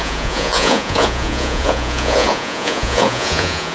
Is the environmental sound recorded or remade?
remade